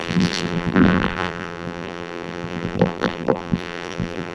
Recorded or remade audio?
remade